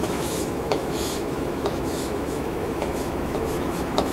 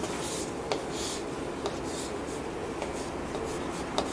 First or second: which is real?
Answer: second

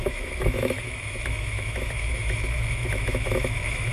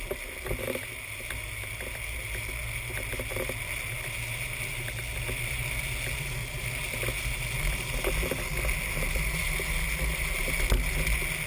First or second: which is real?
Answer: second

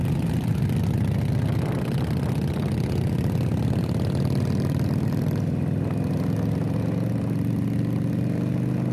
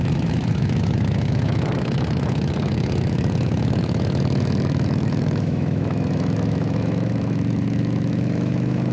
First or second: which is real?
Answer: first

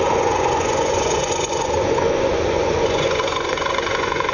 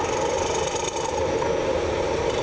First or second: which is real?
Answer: second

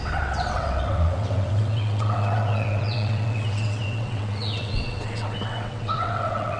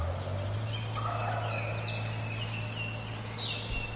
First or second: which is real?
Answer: second